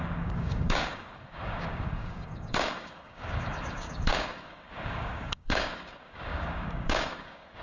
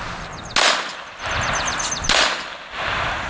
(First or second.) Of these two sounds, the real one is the second